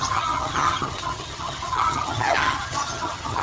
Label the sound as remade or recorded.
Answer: remade